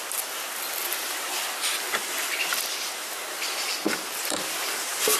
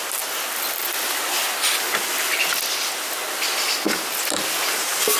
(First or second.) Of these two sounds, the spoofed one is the first